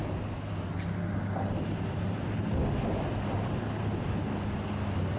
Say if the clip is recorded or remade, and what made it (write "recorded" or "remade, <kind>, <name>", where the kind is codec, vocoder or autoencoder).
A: recorded